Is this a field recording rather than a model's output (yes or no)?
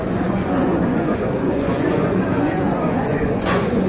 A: no